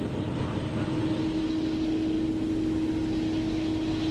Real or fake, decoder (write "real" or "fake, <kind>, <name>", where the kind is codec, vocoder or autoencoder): real